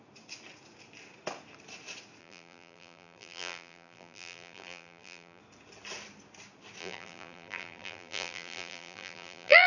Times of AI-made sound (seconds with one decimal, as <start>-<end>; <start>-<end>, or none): 2.2-5.4; 6.8-9.7